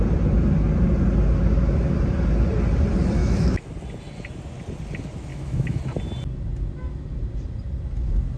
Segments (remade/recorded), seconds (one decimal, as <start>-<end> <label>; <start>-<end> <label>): 0.0-3.2 recorded; 3.2-3.7 remade; 3.7-5.3 recorded; 5.3-5.8 remade; 5.8-8.4 recorded